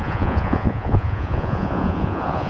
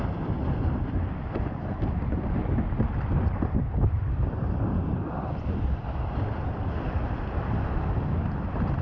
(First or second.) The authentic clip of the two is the second